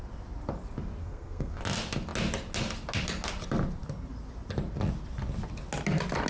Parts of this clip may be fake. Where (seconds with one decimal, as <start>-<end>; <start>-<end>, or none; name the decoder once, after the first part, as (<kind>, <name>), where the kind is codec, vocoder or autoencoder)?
1.0-1.6 (codec, SNAC)